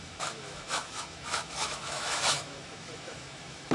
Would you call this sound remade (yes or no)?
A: yes